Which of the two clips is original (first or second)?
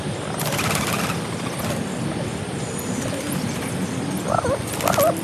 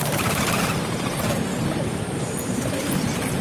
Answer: first